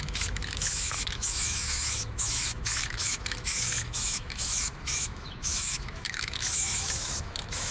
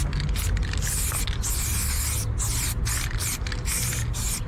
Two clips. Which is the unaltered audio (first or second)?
second